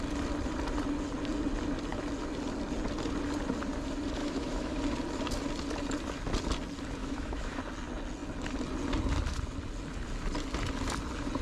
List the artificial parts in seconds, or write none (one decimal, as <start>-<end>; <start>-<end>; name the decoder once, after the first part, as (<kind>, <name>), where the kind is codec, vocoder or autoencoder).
4.2-4.8 (autoencoder, DAC-VAE); 7.0-7.6